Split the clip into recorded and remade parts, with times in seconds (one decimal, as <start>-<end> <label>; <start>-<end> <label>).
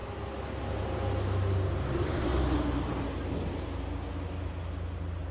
0.0-1.8 recorded; 1.8-2.3 remade; 2.3-5.3 recorded